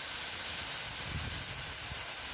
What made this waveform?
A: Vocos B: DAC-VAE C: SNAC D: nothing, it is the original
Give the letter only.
D